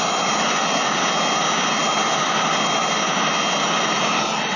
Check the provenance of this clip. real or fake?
real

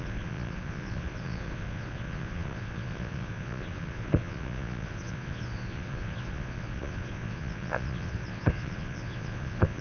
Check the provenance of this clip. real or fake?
fake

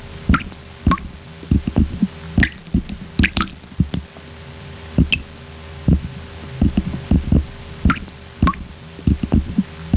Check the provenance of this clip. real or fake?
real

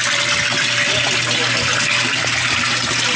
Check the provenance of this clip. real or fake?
real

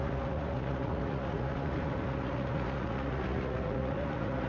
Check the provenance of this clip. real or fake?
fake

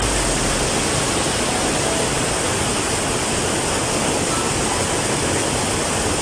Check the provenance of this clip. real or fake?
real